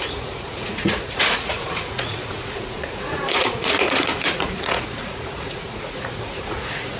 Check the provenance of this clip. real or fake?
fake